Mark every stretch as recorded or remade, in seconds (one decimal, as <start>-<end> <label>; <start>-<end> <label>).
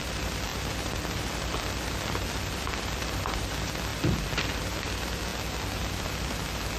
0.0-3.9 remade; 3.9-4.6 recorded; 4.6-5.3 remade; 5.3-5.8 recorded; 5.8-6.8 remade